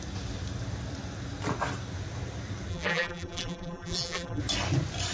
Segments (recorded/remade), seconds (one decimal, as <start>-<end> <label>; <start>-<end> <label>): 0.0-2.7 recorded; 2.7-4.4 remade; 4.4-5.1 recorded